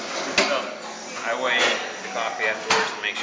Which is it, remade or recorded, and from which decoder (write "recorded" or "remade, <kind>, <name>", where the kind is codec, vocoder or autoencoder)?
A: recorded